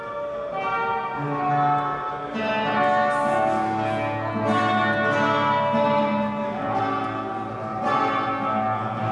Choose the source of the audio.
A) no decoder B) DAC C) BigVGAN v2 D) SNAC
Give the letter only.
A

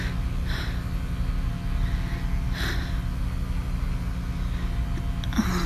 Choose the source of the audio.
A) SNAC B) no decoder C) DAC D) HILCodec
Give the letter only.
B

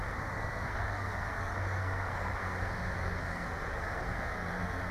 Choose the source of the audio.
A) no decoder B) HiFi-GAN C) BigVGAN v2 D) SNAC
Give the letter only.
D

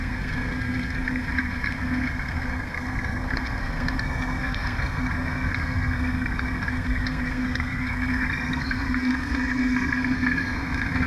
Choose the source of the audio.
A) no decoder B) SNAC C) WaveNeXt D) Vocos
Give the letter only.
B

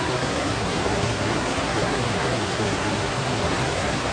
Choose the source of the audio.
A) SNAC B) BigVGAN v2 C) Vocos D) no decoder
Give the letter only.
A